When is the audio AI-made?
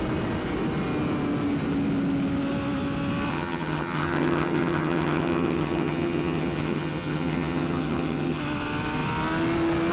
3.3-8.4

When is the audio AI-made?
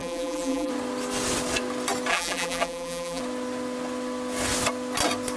0.0-0.7; 2.1-3.2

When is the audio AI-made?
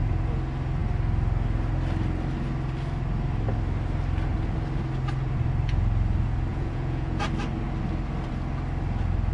6.5-7.2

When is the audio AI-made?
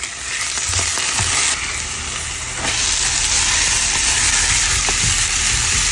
none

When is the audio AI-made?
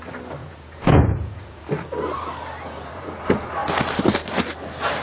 0.4-1.7; 2.6-3.2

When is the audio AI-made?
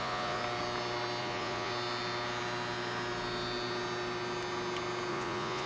0.0-0.4; 1.2-1.7; 5.1-5.7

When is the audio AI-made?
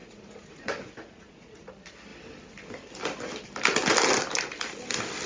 0.0-1.7